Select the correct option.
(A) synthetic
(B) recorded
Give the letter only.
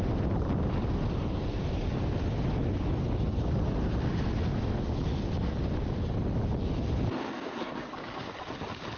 B